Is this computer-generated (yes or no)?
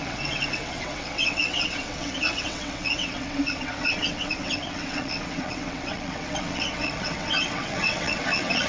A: yes